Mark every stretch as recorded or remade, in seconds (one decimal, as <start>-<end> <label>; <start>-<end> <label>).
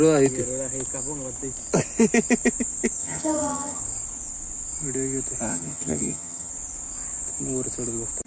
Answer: 0.0-3.0 recorded; 3.0-3.8 remade; 3.8-5.5 recorded; 5.5-6.5 remade; 6.5-8.3 recorded